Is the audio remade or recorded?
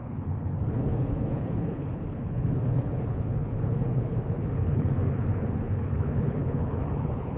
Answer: remade